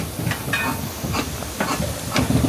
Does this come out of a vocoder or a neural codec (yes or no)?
no